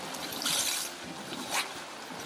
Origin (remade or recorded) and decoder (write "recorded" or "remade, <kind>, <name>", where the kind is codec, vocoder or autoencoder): recorded